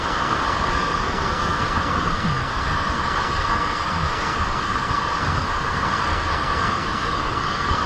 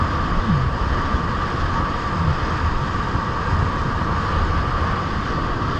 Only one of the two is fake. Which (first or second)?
first